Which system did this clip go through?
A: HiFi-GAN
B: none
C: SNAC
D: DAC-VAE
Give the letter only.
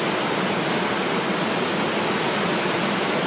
B